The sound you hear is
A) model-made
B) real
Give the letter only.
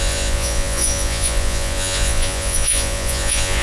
A